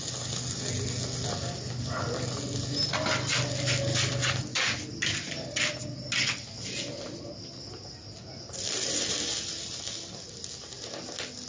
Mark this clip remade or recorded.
recorded